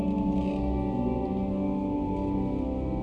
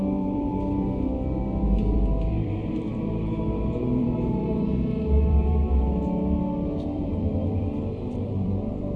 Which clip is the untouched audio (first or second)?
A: first